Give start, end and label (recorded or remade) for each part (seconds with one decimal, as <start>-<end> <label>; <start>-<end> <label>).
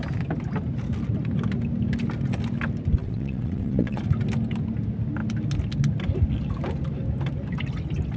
0.0-3.0 recorded; 3.0-4.0 remade; 4.0-8.2 recorded